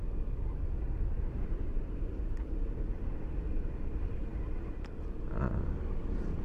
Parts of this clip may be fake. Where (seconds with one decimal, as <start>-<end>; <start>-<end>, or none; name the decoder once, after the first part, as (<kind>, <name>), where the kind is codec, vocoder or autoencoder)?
1.7-2.8 (vocoder, BigVGAN v2)